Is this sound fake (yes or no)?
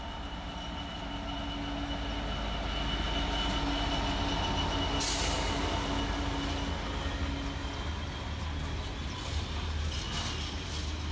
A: no